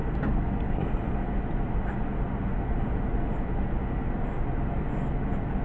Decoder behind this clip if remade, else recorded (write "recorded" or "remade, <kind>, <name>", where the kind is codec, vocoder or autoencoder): recorded